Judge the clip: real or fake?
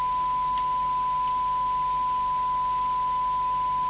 real